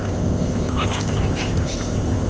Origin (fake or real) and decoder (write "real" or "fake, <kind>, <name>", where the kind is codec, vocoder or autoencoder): fake, codec, ZipCodec